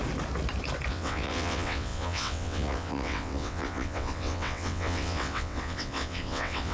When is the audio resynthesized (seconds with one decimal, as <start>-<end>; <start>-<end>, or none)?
0.9-6.7